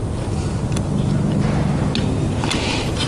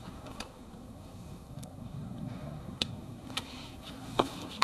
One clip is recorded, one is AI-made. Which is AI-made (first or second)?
second